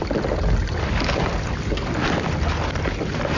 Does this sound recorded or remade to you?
recorded